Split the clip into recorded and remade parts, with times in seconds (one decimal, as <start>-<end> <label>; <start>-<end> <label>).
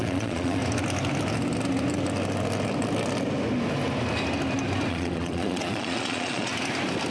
0.0-0.6 remade; 0.6-4.9 recorded; 4.9-6.5 remade; 6.5-7.1 recorded